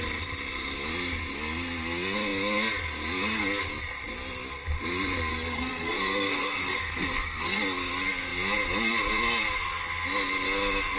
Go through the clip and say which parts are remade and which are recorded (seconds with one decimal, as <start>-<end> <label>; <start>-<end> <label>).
0.0-5.3 recorded; 5.3-7.6 remade; 7.6-11.0 recorded